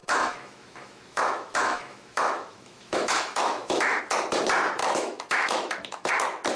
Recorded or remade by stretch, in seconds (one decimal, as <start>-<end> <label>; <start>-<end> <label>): 0.0-4.0 remade; 4.0-4.8 recorded; 4.8-6.1 remade; 6.1-6.6 recorded